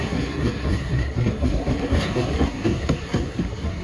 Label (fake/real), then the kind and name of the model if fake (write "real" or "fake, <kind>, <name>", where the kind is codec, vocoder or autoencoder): fake, codec, SNAC